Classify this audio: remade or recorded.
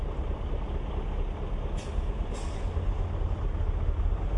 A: recorded